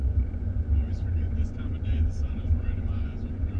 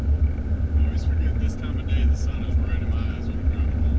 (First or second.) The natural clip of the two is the second